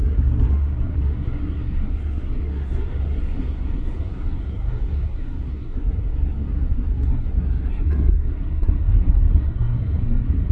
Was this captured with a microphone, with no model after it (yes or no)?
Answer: no